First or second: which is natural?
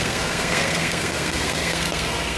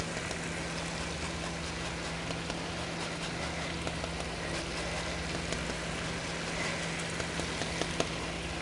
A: second